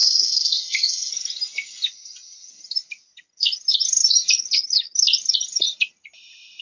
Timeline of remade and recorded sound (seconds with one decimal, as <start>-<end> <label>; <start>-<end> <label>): 0.0-1.1 remade; 1.1-6.6 recorded